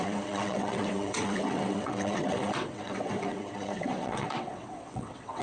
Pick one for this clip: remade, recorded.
remade